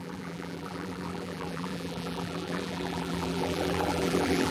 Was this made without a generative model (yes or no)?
no